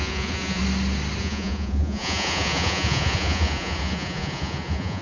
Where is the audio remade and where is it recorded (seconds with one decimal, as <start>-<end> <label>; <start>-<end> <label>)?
0.0-0.6 remade; 0.6-1.2 recorded; 1.2-5.0 remade

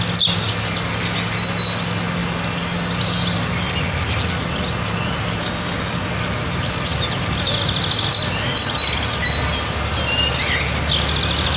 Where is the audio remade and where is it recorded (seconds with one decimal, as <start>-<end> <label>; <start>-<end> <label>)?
0.0-5.4 recorded; 5.4-6.1 remade; 6.1-11.6 recorded

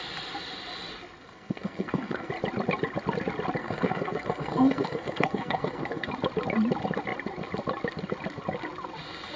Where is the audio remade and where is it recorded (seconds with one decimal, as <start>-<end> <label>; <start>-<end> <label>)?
0.0-1.2 recorded; 1.2-2.3 remade; 2.3-3.6 recorded; 3.6-6.1 remade; 6.1-9.4 recorded